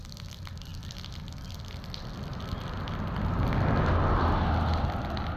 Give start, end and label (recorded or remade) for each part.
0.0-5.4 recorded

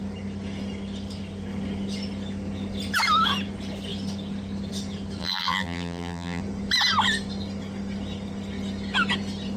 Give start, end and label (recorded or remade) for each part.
0.0-5.2 recorded; 5.2-6.4 remade; 6.4-9.6 recorded

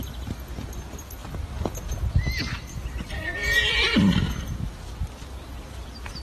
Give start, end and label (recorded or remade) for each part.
0.0-6.2 recorded

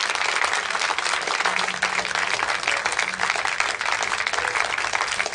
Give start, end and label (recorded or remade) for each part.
0.0-5.3 recorded